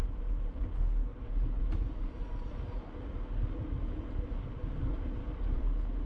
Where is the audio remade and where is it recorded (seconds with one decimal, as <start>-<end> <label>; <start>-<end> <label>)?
0.0-6.1 recorded